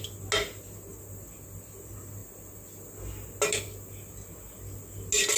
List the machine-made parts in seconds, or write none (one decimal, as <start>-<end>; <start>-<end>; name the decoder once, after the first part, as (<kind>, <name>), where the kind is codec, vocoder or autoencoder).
none